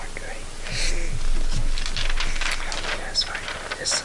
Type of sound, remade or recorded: recorded